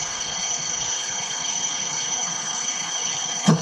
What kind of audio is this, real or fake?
fake